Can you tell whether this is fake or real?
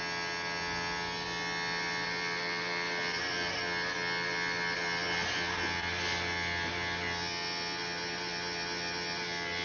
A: real